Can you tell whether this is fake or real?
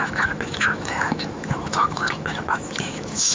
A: fake